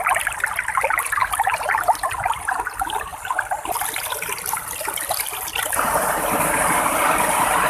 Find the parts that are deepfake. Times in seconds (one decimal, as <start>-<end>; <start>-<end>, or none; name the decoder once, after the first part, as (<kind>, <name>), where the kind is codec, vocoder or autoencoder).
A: 0.0-1.2 (vocoder, BigVGAN v2); 2.3-3.1; 6.8-7.7